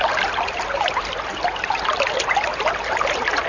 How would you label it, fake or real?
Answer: real